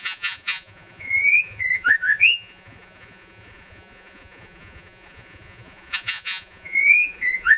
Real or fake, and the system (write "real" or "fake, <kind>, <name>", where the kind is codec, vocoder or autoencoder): fake, vocoder, Vocos